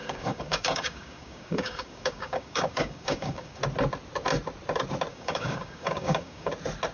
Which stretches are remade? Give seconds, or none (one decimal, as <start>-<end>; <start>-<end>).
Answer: 0.0-3.6; 5.1-6.5